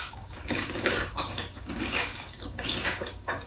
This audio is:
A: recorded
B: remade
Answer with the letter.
B